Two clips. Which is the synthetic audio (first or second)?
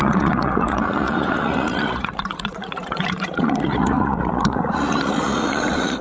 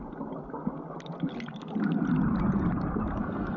first